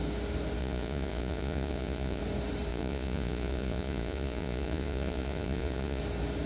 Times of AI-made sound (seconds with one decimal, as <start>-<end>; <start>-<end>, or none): 0.6-2.2; 2.7-6.0